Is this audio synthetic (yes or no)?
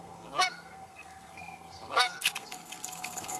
yes